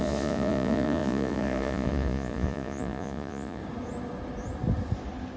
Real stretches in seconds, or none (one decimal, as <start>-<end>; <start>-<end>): 3.6-5.4